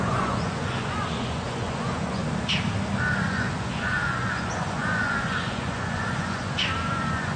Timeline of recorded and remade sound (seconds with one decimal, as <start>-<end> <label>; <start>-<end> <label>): 0.0-2.2 remade; 2.2-3.3 recorded; 3.3-7.4 remade